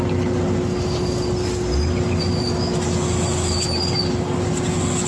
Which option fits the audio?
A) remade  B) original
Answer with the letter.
B